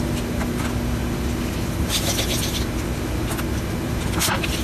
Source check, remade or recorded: recorded